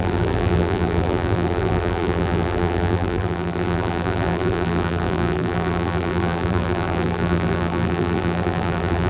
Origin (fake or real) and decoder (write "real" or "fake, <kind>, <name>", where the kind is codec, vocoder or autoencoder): fake, vocoder, BigVGAN v2